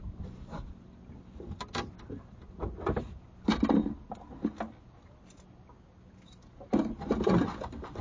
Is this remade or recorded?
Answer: recorded